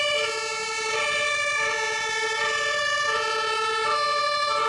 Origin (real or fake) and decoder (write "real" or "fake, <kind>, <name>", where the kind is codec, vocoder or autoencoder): real